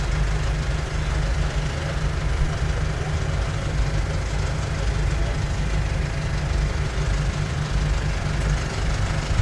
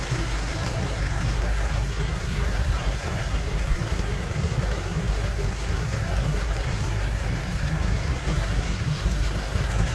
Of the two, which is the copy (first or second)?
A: second